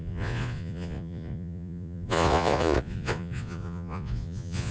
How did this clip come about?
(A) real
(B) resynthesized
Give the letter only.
B